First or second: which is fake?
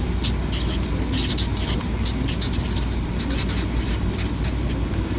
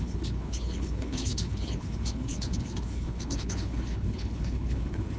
second